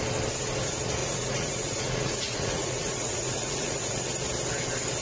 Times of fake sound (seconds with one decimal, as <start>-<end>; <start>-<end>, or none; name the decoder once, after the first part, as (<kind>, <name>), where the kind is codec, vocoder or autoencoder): 1.0-4.0 (vocoder, Vocos)